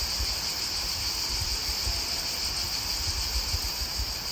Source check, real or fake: real